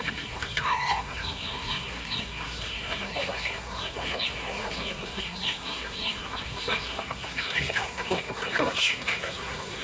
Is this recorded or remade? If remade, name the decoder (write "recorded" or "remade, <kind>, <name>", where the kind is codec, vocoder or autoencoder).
remade, codec, SNAC